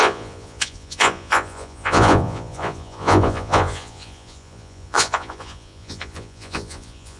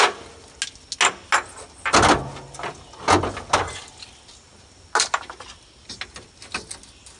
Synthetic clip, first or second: first